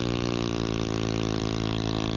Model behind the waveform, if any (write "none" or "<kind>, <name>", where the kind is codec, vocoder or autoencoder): none